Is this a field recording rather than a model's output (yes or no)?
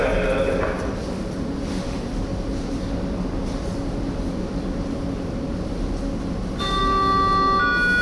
yes